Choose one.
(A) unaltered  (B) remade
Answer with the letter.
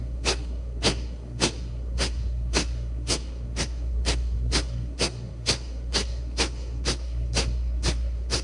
B